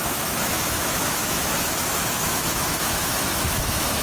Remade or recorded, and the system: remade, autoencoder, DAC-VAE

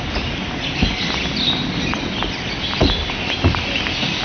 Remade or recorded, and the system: recorded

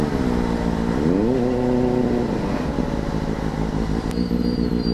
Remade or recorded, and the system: recorded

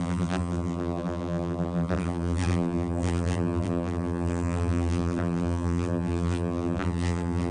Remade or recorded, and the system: remade, vocoder, BigVGAN v2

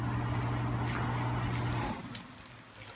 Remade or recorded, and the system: recorded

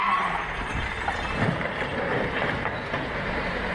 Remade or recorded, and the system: remade, vocoder, BigVGAN v2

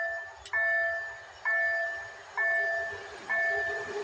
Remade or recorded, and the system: recorded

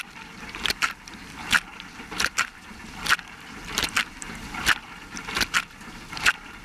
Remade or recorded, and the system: remade, vocoder, BigVGAN v2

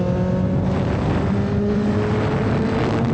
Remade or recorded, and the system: recorded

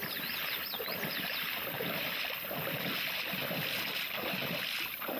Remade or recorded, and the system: recorded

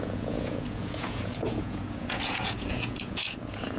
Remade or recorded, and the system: remade, vocoder, Vocos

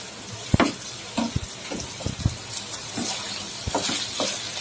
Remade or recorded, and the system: recorded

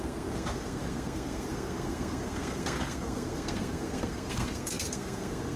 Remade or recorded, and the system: remade, codec, SNAC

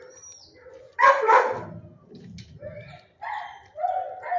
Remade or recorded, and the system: remade, vocoder, BigVGAN v2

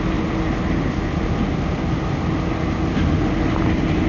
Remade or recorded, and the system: recorded